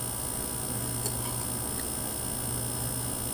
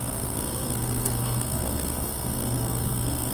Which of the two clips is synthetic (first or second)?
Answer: second